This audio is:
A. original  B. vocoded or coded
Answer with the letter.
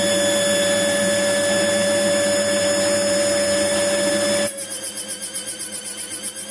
A